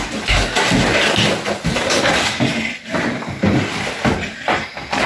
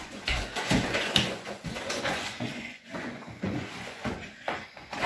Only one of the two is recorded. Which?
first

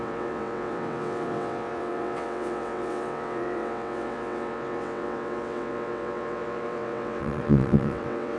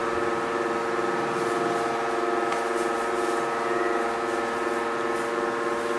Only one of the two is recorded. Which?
second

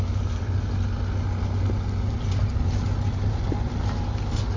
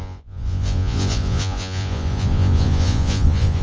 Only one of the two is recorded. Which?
first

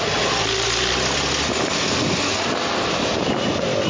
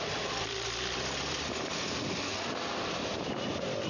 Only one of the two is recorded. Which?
first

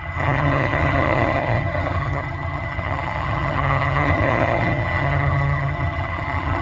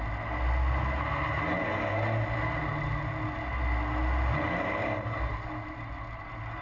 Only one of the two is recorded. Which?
second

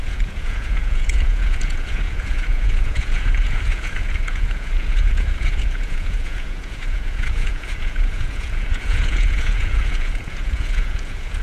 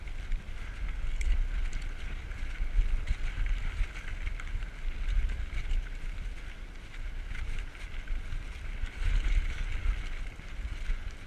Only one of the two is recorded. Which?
second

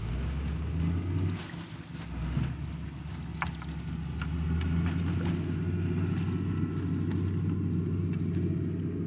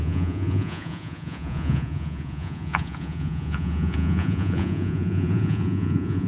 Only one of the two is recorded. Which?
first